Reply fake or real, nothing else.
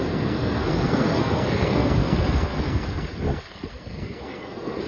fake